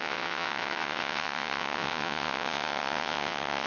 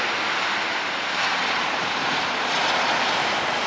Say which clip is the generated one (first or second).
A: first